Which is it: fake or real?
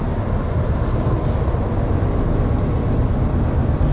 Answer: real